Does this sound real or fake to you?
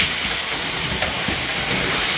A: real